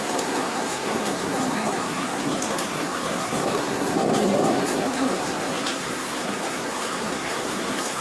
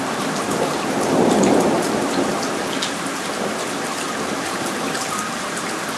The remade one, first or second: first